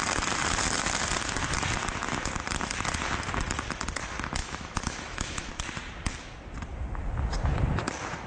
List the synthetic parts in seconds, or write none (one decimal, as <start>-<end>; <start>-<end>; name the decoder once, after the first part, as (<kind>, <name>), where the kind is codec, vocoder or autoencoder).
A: 4.4-5.5 (autoencoder, DAC-VAE)